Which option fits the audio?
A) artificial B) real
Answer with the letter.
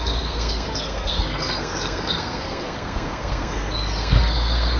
A